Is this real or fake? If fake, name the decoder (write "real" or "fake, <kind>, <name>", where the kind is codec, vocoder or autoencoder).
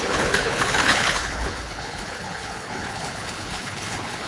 fake, codec, HILCodec